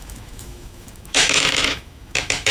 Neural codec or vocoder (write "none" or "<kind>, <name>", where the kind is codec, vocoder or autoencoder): autoencoder, DAC-VAE